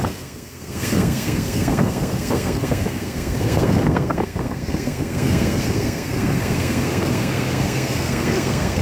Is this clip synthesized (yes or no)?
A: yes